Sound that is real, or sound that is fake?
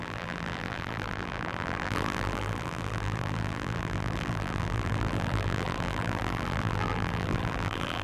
fake